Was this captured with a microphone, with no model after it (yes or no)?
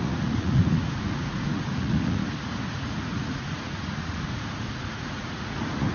no